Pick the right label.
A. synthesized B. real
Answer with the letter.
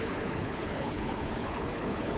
A